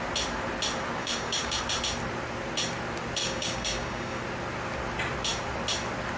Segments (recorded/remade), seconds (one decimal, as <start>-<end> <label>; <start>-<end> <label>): 0.0-1.0 recorded; 1.0-1.6 remade; 1.6-3.2 recorded; 3.2-4.2 remade; 4.2-6.2 recorded